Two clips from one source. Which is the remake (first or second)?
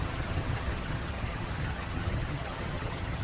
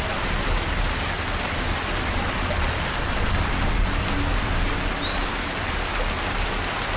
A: first